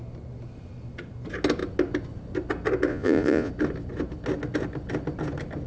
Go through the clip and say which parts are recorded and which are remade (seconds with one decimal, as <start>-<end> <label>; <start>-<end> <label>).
0.0-2.9 recorded; 2.9-3.5 remade; 3.5-5.7 recorded